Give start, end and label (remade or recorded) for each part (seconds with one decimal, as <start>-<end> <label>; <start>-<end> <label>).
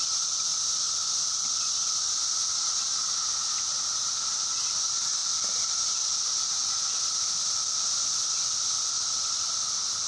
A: 0.0-0.5 remade; 0.5-4.7 recorded; 4.7-6.6 remade; 6.6-10.1 recorded